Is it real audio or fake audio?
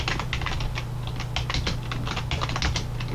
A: real